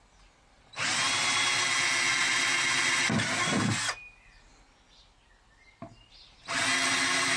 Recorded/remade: recorded